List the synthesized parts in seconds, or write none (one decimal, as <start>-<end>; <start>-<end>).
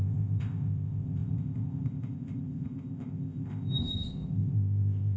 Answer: 0.0-5.2